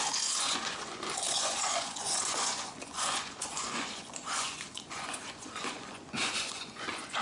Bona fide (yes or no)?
no